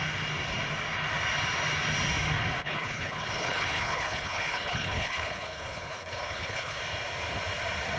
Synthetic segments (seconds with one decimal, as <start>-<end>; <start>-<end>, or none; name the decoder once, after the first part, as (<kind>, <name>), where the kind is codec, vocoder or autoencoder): 2.6-6.8 (codec, HILCodec)